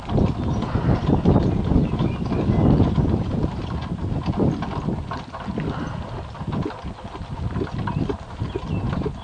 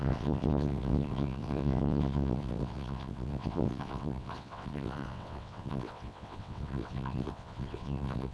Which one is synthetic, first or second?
second